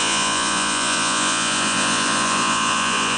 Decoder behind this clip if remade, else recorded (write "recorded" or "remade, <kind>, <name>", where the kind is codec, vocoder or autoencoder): remade, vocoder, Vocos